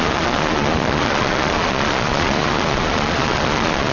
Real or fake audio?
fake